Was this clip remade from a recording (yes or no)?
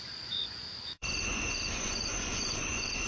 yes